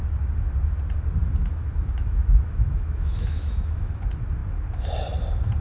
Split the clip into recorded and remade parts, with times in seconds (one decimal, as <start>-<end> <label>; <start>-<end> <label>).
0.0-1.2 recorded; 1.2-4.0 remade; 4.0-5.6 recorded